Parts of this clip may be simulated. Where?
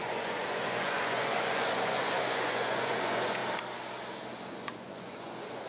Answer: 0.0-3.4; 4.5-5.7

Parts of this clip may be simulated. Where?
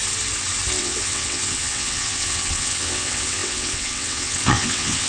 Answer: 0.8-5.1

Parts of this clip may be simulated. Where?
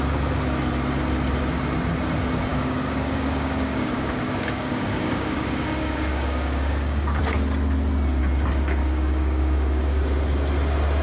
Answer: 2.5-7.2; 8.8-10.0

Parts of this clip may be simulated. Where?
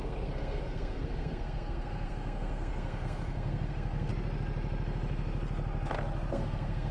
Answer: 0.0-4.1; 6.3-6.9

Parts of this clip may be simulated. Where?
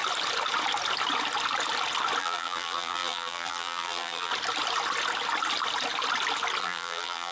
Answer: 2.2-4.3; 6.6-7.3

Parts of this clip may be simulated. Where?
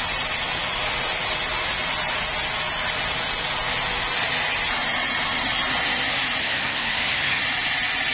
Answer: 6.4-7.4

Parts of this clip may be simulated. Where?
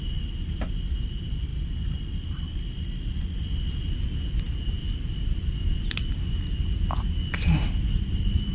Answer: 1.5-3.1; 4.8-5.8